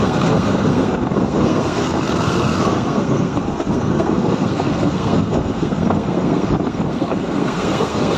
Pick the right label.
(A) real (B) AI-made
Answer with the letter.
B